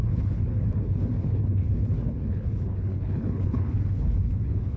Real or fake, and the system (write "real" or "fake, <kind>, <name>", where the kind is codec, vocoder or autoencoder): fake, codec, HILCodec